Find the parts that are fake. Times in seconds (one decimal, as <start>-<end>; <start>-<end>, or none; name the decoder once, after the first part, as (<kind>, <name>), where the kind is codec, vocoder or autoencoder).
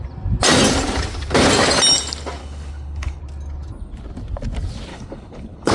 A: 2.4-3.2 (codec, HILCodec); 4.9-5.7